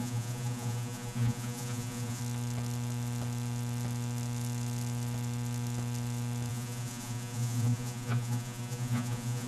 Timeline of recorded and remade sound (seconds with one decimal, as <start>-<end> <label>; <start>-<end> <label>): 0.0-2.2 remade; 2.2-6.5 recorded; 6.5-9.5 remade